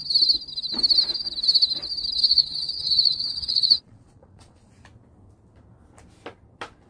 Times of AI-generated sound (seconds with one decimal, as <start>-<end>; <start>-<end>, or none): 2.3-4.7